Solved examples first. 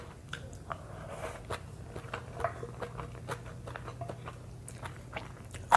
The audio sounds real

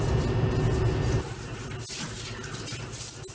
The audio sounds real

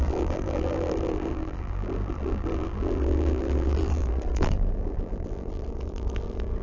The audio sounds fake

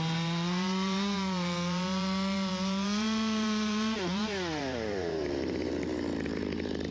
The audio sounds fake